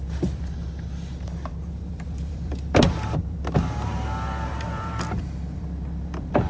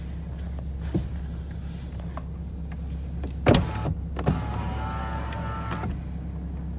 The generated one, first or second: first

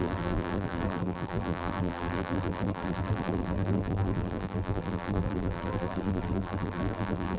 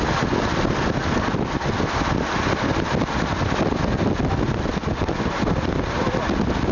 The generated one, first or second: first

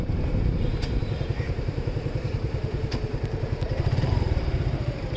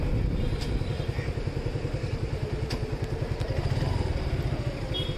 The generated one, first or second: first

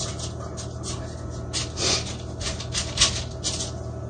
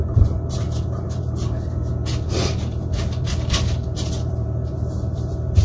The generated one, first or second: second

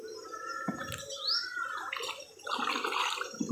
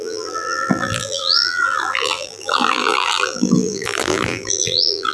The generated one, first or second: second